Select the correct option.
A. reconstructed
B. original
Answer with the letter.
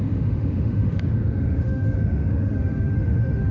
A